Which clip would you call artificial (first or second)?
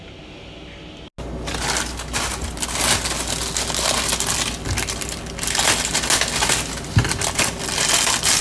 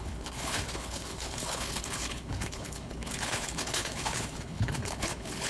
second